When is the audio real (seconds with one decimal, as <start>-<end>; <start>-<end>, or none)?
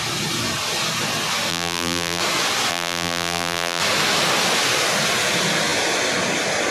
0.0-1.5; 2.2-2.7; 3.8-6.7